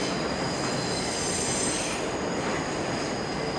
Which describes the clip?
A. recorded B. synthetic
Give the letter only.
A